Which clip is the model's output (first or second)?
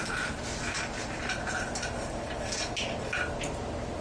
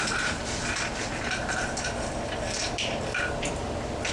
second